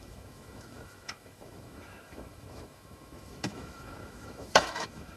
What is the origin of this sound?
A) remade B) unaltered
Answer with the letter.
A